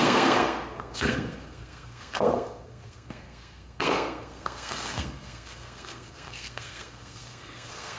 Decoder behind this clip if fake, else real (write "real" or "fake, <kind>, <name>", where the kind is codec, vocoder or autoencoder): fake, codec, SNAC